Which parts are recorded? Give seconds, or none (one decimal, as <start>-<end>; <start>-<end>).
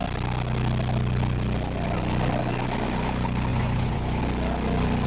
0.0-3.5; 4.2-5.1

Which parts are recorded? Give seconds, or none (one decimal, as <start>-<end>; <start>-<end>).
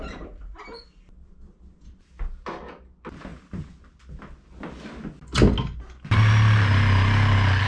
0.0-7.7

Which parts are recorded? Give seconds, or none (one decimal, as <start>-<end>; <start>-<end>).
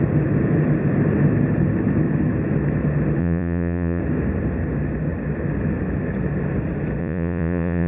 0.0-3.2; 4.0-7.0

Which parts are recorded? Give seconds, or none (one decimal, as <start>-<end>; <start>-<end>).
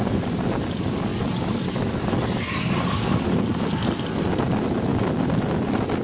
0.0-6.0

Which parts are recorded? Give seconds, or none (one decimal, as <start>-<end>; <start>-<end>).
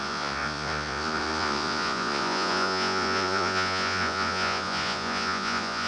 none